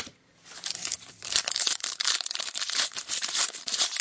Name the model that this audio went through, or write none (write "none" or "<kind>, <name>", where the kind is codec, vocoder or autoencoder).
vocoder, BigVGAN v2